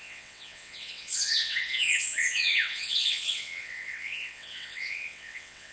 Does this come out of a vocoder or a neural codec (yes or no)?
yes